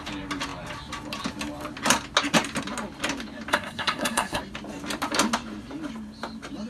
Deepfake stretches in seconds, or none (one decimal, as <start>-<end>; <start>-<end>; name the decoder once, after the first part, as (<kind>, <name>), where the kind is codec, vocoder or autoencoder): 3.5-4.4 (codec, SNAC)